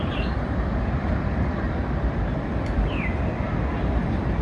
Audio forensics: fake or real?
fake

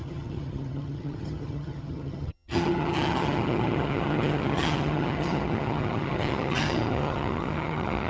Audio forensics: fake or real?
fake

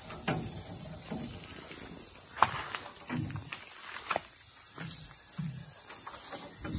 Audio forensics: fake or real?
real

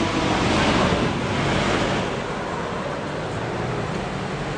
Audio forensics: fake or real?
real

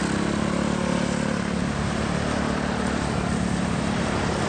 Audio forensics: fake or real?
real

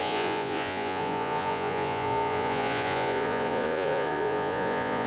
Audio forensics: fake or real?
fake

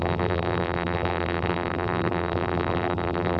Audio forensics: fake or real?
fake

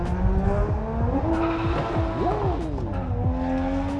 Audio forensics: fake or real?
real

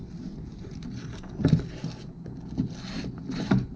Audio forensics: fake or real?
real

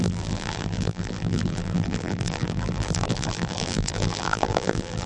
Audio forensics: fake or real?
fake